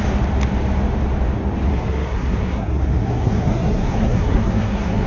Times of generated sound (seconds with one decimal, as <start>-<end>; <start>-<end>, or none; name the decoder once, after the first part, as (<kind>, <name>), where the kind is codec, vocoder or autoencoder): 1.7-5.1 (codec, SNAC)